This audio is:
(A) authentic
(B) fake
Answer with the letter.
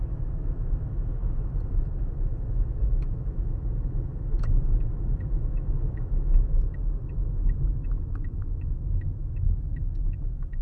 B